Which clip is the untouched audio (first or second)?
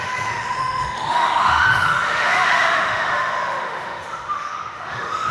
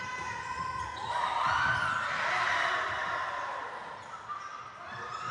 second